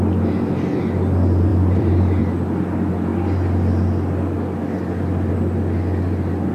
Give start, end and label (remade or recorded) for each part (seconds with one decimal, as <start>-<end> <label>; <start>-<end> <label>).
0.0-1.5 recorded; 1.5-2.2 remade; 2.2-6.5 recorded